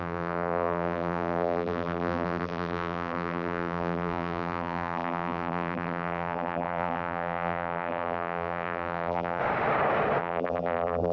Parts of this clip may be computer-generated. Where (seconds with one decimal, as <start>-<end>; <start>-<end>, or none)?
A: 0.0-9.4; 10.2-11.1